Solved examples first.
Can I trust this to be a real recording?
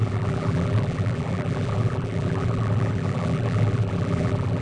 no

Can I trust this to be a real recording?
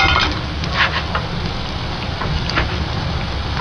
yes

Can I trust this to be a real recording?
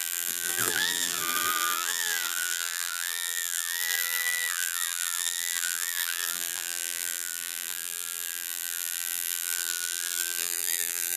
no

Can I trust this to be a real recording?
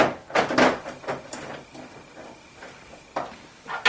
yes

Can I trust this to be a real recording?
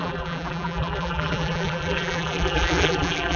no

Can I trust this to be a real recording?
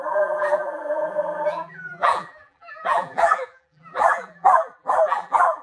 no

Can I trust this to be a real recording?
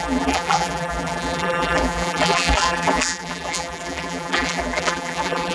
no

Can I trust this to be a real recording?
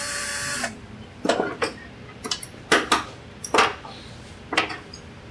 no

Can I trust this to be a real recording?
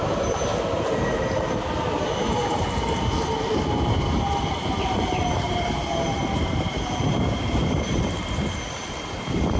no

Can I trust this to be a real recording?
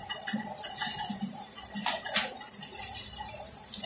yes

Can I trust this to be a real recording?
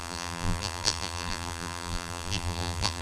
no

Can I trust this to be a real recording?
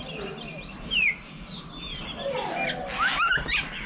yes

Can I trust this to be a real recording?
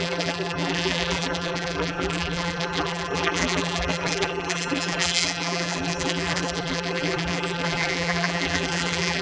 no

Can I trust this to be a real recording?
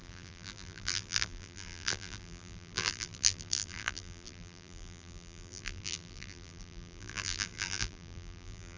no